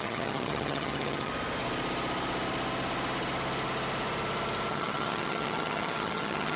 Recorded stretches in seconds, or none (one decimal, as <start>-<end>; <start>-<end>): 1.3-4.7